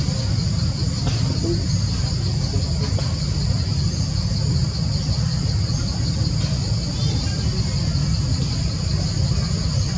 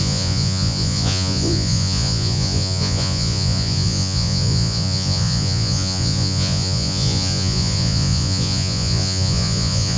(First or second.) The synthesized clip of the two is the second